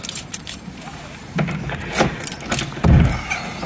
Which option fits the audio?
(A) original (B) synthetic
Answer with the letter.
A